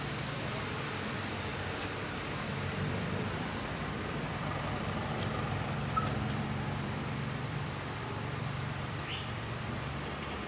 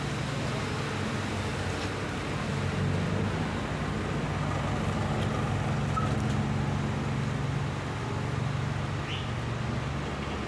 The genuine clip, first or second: second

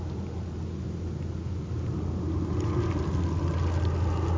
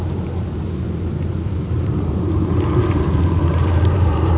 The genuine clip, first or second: first